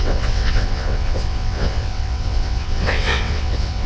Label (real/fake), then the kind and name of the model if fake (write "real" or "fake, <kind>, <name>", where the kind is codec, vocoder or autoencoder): fake, vocoder, WaveNeXt